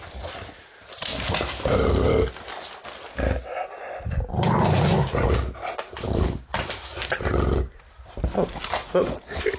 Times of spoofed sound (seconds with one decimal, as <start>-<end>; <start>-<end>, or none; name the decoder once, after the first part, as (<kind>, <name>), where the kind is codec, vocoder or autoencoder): 5.6-7.0 (vocoder, BigVGAN v2)